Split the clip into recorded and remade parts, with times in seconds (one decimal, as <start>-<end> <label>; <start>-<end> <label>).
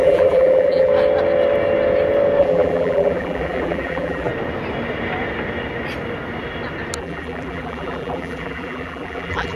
0.0-0.9 remade; 0.9-2.4 recorded; 2.4-4.3 remade; 4.3-7.0 recorded; 7.0-9.6 remade